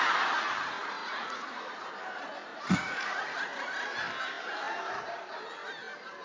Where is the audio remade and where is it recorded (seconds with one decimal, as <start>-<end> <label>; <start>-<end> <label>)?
0.0-1.0 recorded; 1.0-1.6 remade; 1.6-2.5 recorded; 2.5-3.7 remade; 3.7-6.2 recorded